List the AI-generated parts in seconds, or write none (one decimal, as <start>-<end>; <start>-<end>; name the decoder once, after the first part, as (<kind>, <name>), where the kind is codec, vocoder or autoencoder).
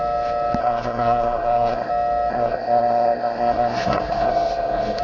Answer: 0.6-1.9 (codec, SNAC); 2.3-5.0